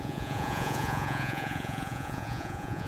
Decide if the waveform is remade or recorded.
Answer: remade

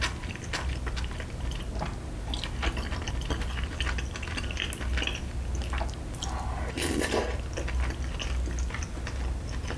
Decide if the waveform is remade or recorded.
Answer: recorded